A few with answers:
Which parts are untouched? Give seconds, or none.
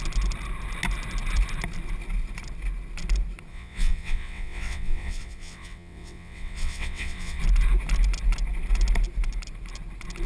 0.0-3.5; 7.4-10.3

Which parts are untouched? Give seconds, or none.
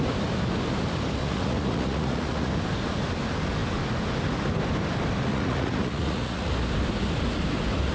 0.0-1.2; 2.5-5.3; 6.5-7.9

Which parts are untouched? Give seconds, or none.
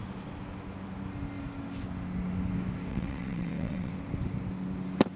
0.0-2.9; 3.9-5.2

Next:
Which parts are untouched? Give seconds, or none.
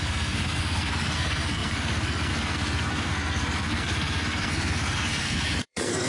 none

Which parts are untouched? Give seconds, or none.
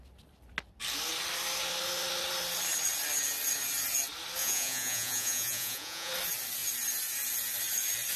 0.0-4.4; 6.1-8.2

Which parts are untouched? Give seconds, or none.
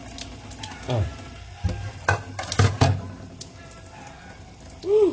0.0-5.1